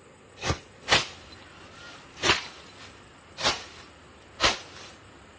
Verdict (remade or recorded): recorded